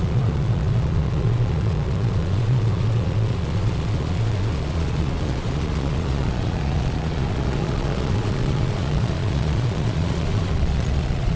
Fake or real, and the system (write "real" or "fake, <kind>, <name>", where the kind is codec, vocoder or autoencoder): fake, vocoder, Vocos